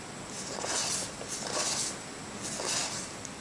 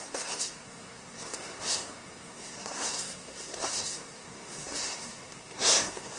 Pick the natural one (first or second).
first